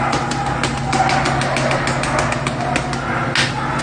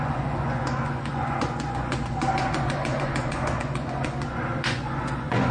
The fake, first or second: second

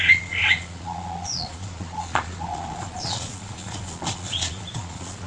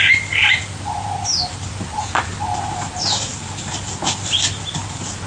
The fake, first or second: first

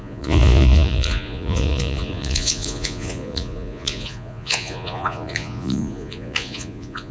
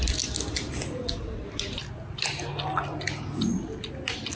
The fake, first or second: first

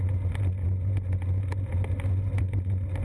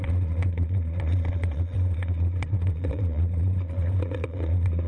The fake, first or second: second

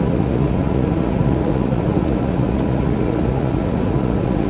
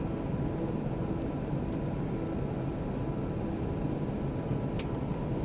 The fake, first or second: first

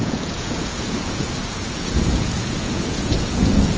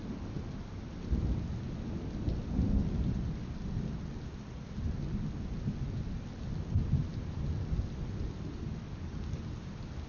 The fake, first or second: first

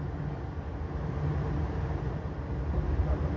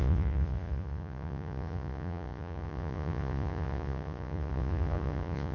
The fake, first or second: second